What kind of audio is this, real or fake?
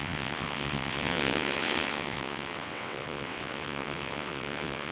fake